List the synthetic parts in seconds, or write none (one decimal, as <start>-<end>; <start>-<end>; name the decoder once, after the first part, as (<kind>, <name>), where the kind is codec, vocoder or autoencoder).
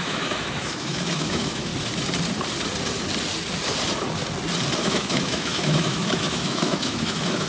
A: 0.0-1.7 (autoencoder, DAC-VAE); 4.8-7.5